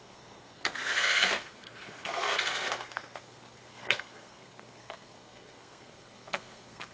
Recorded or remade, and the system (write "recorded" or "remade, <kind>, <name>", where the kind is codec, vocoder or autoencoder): remade, codec, SNAC